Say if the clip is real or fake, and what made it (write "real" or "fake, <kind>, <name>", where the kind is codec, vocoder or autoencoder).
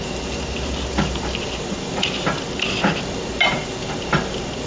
real